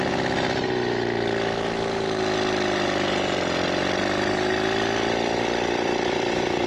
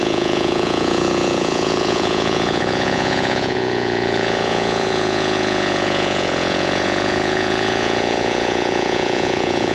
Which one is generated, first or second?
second